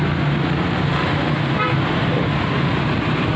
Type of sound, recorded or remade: recorded